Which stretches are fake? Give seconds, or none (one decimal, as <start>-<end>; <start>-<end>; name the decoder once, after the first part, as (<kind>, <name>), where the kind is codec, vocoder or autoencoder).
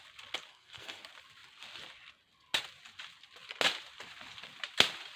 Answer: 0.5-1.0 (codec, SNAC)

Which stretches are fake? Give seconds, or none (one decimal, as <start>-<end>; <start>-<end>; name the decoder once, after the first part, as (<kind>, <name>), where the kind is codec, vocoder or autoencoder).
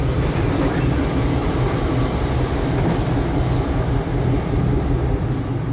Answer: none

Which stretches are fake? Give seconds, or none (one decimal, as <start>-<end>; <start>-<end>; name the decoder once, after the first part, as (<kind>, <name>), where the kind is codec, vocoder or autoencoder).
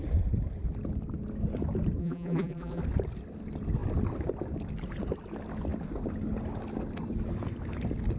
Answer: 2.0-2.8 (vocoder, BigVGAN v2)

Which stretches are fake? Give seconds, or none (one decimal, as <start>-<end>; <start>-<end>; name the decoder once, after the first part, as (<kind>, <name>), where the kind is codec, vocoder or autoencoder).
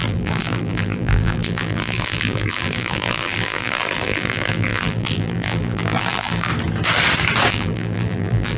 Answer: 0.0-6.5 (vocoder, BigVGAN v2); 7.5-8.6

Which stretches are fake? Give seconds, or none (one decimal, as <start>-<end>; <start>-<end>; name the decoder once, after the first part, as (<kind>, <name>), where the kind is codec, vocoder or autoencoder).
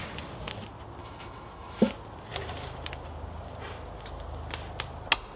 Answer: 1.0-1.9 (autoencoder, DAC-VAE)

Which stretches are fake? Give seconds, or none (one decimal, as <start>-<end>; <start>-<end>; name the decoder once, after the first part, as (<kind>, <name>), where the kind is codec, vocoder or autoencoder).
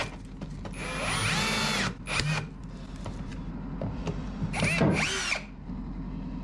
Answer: none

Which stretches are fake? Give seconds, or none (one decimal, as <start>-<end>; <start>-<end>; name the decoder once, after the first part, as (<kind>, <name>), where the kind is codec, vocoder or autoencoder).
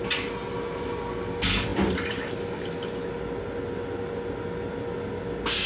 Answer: none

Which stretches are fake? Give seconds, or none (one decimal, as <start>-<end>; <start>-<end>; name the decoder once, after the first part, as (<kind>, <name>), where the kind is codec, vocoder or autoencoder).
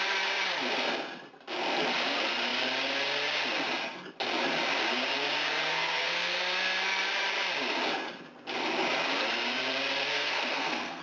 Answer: 5.6-6.4 (codec, SNAC); 10.1-11.0